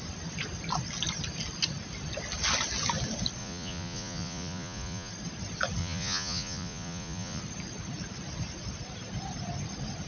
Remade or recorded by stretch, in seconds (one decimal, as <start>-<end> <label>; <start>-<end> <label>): 0.0-3.4 recorded; 3.4-5.1 remade; 5.1-5.8 recorded; 5.8-7.4 remade; 7.4-10.1 recorded